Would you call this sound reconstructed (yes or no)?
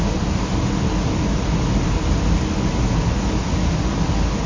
no